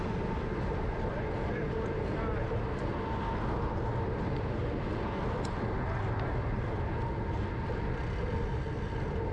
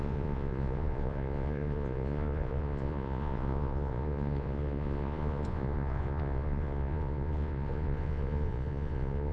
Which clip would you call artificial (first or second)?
second